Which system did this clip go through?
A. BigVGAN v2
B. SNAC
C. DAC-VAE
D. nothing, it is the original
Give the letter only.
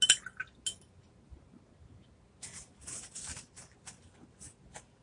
D